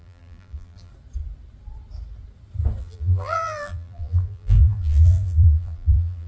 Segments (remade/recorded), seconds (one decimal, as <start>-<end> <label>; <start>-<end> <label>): 0.0-0.9 remade; 0.9-2.8 recorded; 2.8-6.3 remade